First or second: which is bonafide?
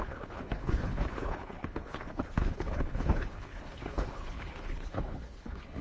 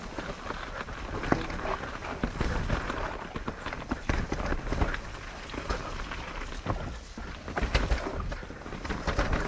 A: second